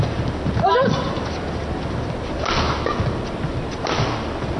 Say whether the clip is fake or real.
real